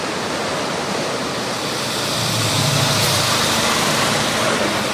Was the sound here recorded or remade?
remade